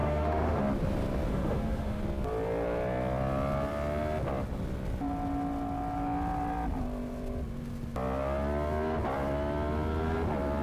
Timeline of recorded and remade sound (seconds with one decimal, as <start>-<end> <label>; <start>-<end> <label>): 0.0-0.6 remade; 0.6-1.3 recorded; 1.3-2.0 remade; 2.0-10.6 recorded